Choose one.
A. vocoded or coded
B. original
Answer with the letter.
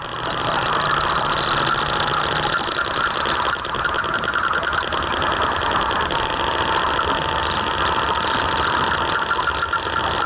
B